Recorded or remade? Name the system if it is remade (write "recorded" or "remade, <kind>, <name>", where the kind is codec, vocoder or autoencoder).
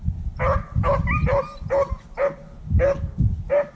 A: recorded